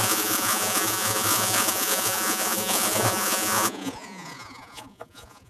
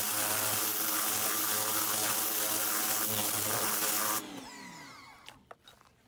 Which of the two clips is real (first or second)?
second